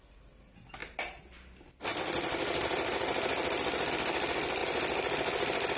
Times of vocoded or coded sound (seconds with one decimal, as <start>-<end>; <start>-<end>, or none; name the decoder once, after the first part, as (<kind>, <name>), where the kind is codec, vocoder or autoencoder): none